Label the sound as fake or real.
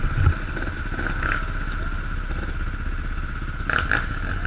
real